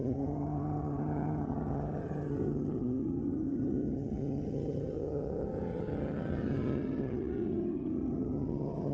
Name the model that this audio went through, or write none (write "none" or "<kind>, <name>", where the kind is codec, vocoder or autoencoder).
vocoder, HiFi-GAN